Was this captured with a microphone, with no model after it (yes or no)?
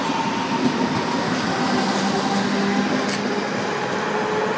yes